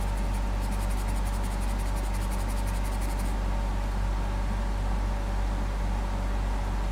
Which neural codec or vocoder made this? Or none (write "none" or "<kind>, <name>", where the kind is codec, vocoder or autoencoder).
none